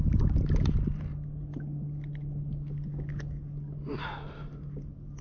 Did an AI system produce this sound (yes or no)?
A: no